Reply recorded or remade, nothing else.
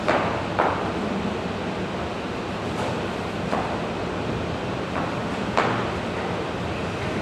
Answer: recorded